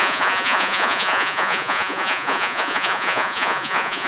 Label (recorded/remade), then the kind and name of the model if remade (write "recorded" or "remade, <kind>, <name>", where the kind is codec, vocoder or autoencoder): remade, vocoder, Vocos